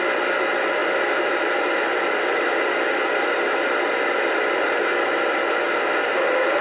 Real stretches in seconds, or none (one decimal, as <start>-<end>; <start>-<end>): 0.0-6.6